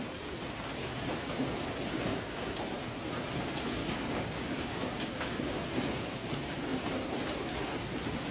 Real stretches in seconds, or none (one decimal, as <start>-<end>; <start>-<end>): 0.0-2.1; 2.6-3.8; 6.3-8.3